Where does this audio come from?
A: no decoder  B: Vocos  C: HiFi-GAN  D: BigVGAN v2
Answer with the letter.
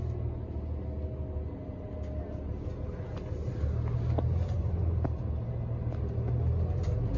A